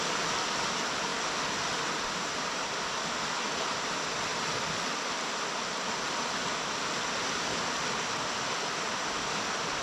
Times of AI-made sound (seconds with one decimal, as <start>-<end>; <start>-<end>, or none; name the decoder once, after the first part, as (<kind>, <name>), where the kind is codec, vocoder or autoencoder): none